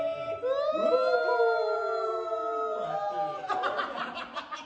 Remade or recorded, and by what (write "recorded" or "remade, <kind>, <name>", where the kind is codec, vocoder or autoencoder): recorded